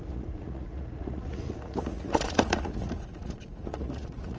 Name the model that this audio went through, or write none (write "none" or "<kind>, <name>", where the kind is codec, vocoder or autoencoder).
vocoder, Vocos